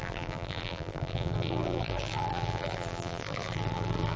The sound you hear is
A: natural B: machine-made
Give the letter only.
B